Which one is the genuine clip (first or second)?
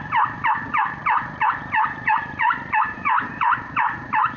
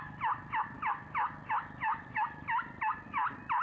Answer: second